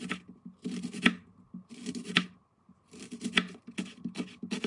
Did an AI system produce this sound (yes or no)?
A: no